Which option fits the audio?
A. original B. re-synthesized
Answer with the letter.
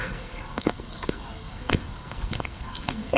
B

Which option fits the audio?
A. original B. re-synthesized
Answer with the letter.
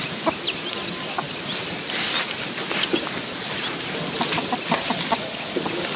A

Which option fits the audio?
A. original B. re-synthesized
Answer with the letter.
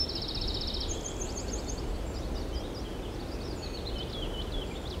A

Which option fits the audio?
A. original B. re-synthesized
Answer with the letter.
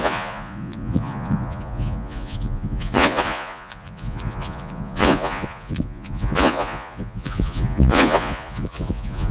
B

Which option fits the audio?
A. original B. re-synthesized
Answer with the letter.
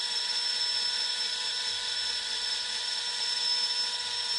A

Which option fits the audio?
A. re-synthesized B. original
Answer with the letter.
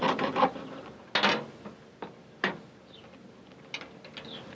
B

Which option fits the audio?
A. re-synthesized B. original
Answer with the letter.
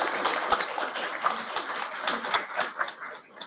B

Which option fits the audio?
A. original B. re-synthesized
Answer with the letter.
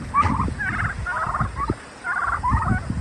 A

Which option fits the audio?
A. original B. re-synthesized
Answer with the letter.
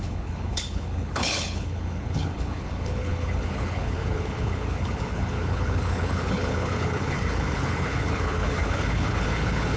B